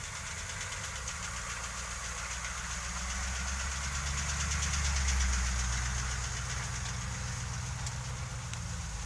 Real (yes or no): yes